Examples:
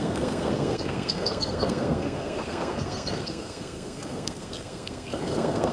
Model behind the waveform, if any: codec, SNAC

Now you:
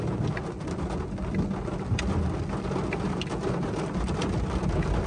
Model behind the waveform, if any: none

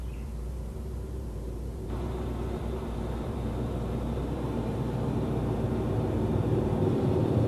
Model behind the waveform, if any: vocoder, BigVGAN v2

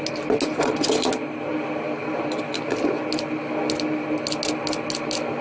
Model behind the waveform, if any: none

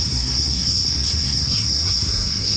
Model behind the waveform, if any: codec, SNAC